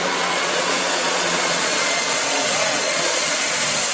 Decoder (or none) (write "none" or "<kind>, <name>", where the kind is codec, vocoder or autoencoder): vocoder, Vocos